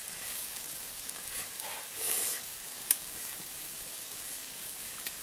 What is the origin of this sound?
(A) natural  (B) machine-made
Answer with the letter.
B